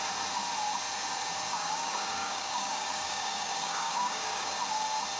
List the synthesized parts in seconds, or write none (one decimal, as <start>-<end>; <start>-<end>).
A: 1.5-4.6